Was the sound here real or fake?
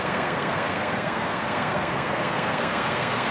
fake